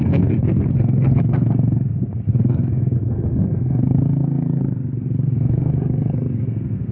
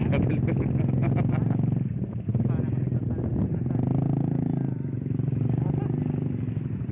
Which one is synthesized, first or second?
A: first